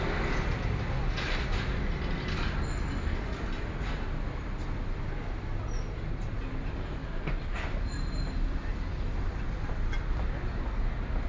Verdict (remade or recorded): recorded